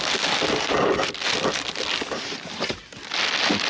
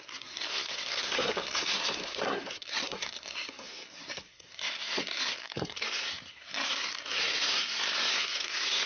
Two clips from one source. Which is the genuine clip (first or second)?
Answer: first